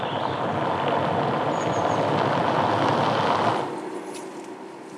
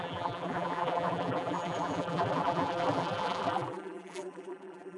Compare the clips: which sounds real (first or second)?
first